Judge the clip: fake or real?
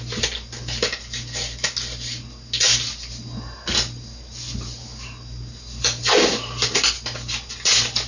real